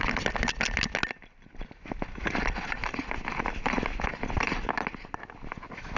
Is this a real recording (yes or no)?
yes